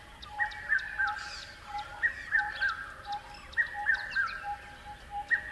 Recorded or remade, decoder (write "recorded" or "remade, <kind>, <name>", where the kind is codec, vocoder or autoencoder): recorded